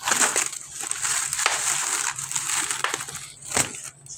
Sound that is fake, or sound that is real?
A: real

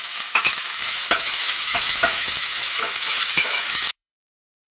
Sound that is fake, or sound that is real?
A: fake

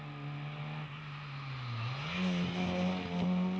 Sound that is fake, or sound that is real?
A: real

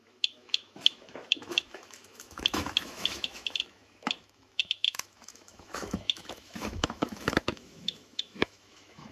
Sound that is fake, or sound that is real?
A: fake